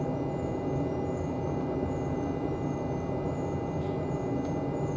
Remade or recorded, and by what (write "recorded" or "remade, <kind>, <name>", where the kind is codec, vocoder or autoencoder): recorded